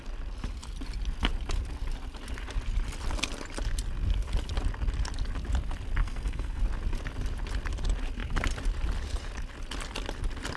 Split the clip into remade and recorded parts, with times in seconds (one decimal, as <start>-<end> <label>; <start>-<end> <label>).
0.0-6.0 recorded; 6.0-6.6 remade; 6.6-10.6 recorded